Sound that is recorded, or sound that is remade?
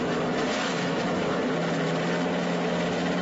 recorded